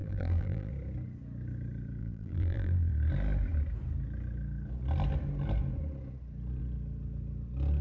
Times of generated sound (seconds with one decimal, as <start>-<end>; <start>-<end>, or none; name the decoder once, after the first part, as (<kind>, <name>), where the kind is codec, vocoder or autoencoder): 0.0-0.7 (vocoder, BigVGAN v2); 2.0-2.9